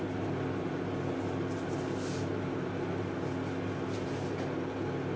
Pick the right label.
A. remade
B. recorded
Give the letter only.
B